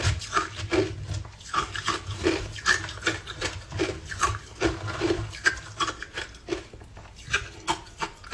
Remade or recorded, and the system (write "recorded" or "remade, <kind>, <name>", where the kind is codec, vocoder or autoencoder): recorded